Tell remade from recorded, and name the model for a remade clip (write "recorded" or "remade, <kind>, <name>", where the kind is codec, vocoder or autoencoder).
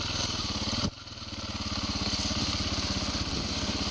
recorded